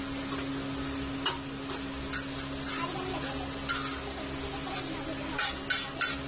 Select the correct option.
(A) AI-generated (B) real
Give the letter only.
B